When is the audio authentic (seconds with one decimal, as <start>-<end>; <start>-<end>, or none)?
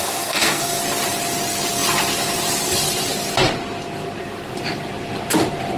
0.8-5.8